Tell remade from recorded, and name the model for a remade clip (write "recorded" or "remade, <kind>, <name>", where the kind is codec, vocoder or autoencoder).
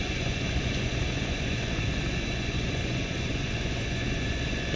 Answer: remade, vocoder, Vocos